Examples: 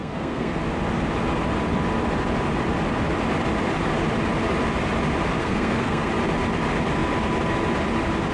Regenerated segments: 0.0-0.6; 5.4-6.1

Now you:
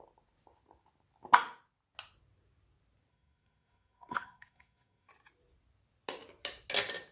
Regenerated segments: 3.1-5.1